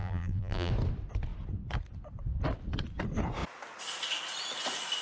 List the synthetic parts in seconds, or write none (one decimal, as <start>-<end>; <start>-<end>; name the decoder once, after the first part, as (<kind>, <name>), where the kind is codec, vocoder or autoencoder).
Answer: 0.0-0.7 (vocoder, BigVGAN v2)